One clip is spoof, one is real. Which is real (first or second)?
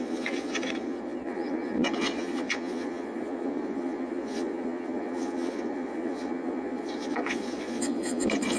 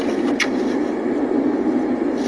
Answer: second